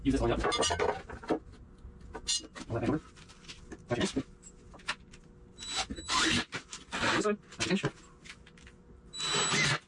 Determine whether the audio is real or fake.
real